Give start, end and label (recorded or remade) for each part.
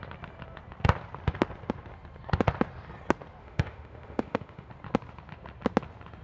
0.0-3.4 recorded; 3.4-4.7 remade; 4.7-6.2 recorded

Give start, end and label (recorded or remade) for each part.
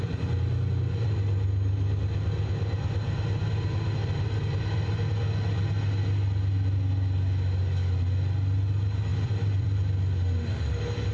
0.0-9.1 recorded; 9.1-9.8 remade; 9.8-11.1 recorded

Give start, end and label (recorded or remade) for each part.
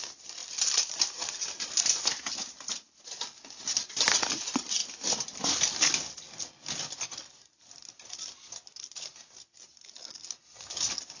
0.0-0.4 recorded; 0.4-3.0 remade; 3.0-11.2 recorded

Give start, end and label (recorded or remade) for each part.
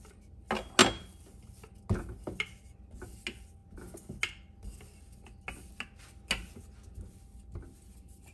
0.0-8.3 recorded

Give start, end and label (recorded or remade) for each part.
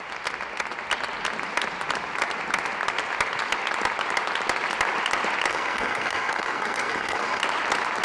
0.0-5.5 recorded; 5.5-7.4 remade; 7.4-8.0 recorded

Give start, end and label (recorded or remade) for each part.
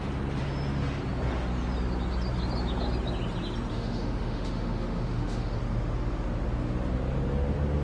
0.0-3.7 recorded; 3.7-5.6 remade; 5.6-7.8 recorded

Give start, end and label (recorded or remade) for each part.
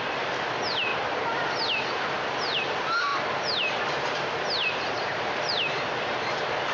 0.0-0.9 recorded; 0.9-1.5 remade; 1.5-3.1 recorded; 3.1-6.7 remade